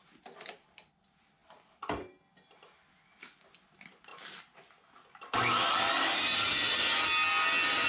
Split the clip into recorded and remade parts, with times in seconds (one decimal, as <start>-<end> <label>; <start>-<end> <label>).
0.0-1.4 recorded; 1.4-2.2 remade; 2.2-7.9 recorded

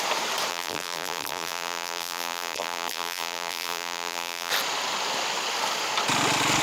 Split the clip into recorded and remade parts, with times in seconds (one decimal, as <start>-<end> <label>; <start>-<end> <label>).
0.0-0.5 recorded; 0.5-4.5 remade; 4.5-6.6 recorded

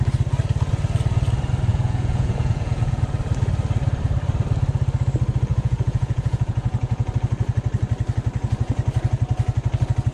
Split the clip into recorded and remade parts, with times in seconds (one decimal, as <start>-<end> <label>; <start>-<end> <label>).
0.0-1.7 recorded; 1.7-3.0 remade; 3.0-5.5 recorded; 5.5-7.1 remade; 7.1-10.1 recorded

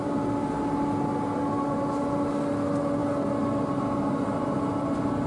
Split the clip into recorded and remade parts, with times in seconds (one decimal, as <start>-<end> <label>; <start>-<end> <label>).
0.0-5.3 recorded

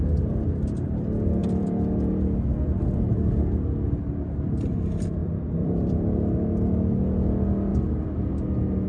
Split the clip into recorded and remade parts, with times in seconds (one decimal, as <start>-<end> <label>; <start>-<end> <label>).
0.0-1.4 recorded; 1.4-2.1 remade; 2.1-5.2 recorded; 5.2-6.3 remade; 6.3-8.9 recorded

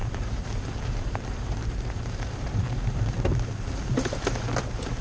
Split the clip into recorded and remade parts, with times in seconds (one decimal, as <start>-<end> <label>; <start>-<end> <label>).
0.0-3.0 remade; 3.0-5.0 recorded

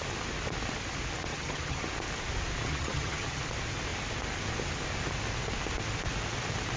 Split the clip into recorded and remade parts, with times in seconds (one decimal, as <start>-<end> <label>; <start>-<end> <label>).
0.0-1.3 recorded; 1.3-1.9 remade; 1.9-2.6 recorded; 2.6-3.4 remade; 3.4-6.8 recorded